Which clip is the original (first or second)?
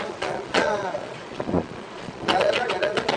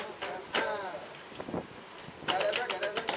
second